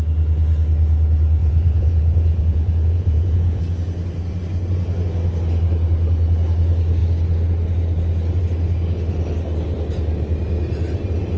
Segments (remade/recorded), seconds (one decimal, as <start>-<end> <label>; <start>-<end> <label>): 0.0-1.4 recorded; 1.4-3.6 remade; 3.6-11.4 recorded